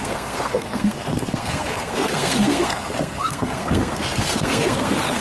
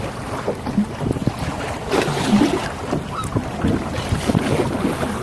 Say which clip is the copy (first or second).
first